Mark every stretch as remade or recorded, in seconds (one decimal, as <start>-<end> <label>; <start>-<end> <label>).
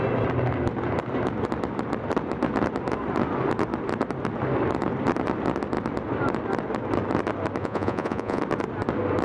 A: 0.0-7.6 recorded; 7.6-8.4 remade; 8.4-9.2 recorded